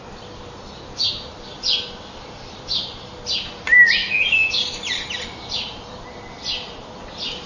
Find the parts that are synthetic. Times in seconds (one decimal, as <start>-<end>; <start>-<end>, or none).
4.0-4.5

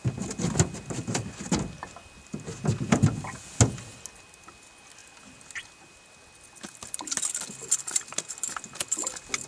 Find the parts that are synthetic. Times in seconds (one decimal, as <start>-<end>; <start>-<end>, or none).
none